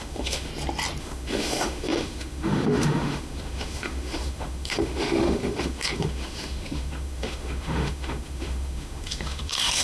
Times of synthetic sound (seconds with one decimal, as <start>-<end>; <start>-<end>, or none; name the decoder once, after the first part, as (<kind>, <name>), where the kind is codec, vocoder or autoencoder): 0.0-0.5 (autoencoder, DAC-VAE); 1.0-9.8